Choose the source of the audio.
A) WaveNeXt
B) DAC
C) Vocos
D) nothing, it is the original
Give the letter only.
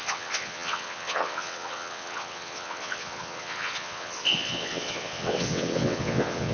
A